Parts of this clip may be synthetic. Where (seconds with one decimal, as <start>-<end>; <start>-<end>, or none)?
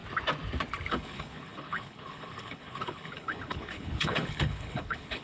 0.9-5.2